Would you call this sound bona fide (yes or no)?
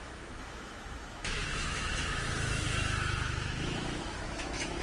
no